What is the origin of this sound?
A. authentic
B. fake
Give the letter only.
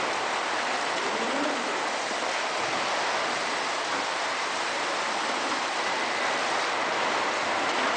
A